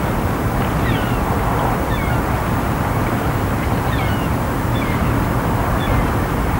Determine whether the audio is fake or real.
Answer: real